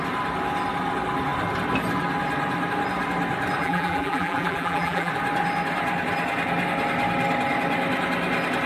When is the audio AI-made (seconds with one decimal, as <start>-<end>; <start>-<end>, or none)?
3.6-5.1